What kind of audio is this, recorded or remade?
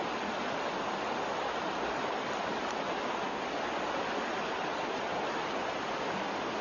recorded